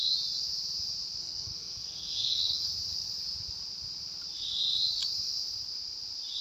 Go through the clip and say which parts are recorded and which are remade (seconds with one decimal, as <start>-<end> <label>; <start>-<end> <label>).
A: 0.0-1.2 recorded; 1.2-2.7 remade; 2.7-6.4 recorded